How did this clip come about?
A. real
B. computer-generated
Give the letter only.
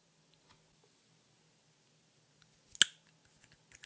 A